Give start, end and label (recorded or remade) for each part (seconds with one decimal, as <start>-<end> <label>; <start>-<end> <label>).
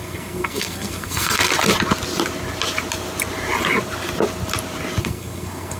0.0-1.5 remade; 1.5-5.0 recorded; 5.0-5.8 remade